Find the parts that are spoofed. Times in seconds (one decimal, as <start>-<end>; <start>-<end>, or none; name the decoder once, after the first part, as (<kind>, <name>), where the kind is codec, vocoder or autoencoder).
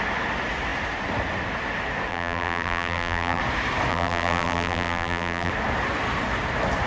2.1-3.4 (vocoder, BigVGAN v2); 3.9-5.5